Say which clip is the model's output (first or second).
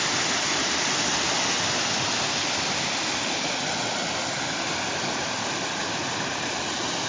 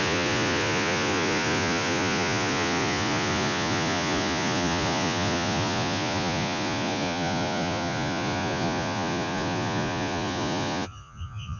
second